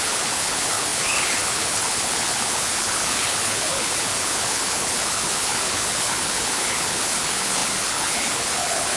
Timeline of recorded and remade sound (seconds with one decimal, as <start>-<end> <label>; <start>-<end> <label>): 0.0-9.0 remade